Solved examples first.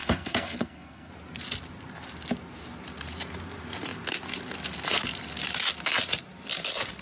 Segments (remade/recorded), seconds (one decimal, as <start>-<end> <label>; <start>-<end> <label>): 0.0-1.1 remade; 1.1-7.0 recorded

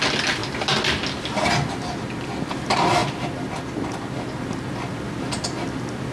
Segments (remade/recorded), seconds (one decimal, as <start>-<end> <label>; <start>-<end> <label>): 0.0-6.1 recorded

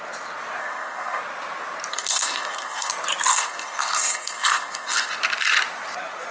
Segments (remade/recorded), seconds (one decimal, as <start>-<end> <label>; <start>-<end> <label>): 0.0-0.6 recorded; 0.6-1.2 remade; 1.2-1.9 recorded; 1.9-2.9 remade; 2.9-3.3 recorded; 3.3-5.1 remade; 5.1-6.3 recorded